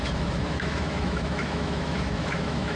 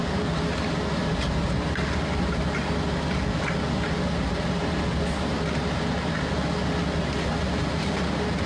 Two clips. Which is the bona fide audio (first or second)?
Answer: second